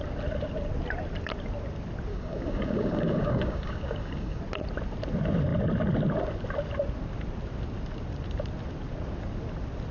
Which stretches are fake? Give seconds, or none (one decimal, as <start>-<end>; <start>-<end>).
2.1-4.4

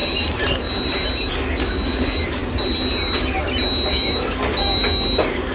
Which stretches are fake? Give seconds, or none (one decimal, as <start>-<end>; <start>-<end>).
1.3-2.4; 3.9-5.5